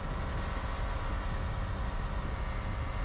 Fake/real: real